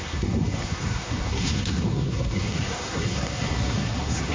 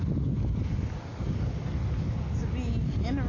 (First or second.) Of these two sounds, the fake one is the first